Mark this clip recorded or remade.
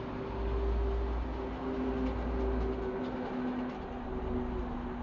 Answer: recorded